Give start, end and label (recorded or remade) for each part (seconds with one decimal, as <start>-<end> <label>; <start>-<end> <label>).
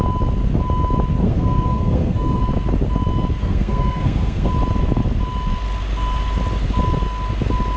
0.0-1.2 recorded; 1.2-2.4 remade; 2.4-3.4 recorded; 3.4-4.5 remade; 4.5-7.8 recorded